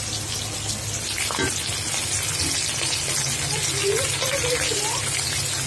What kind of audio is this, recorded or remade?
recorded